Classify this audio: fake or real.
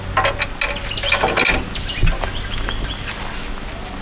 real